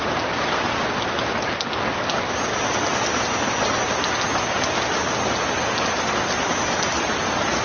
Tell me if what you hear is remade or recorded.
recorded